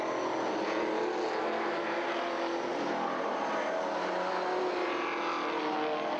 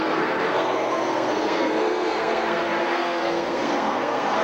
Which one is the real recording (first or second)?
first